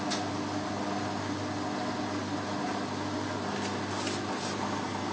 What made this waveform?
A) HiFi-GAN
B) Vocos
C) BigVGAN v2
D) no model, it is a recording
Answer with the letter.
D